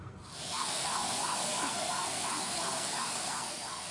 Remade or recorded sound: remade